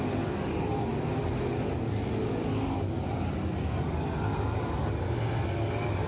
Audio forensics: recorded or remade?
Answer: recorded